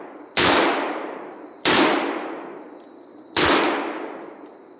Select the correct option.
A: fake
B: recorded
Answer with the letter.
B